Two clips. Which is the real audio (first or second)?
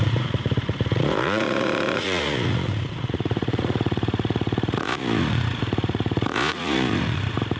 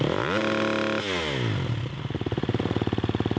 second